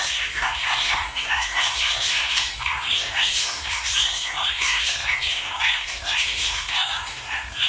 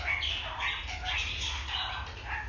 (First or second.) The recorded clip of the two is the second